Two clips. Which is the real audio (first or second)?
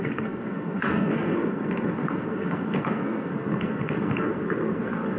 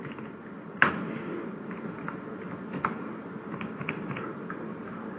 second